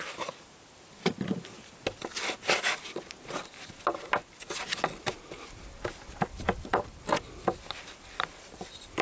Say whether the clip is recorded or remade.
recorded